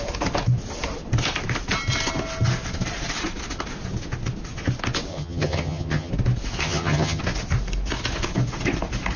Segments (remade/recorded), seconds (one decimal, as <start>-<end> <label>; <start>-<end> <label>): 0.0-5.1 recorded; 5.1-6.1 remade; 6.1-6.6 recorded; 6.6-7.2 remade; 7.2-9.2 recorded